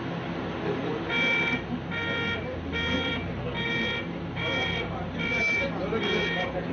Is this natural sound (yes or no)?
yes